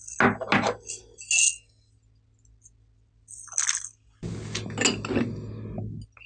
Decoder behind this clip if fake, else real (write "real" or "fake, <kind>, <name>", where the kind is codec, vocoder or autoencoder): real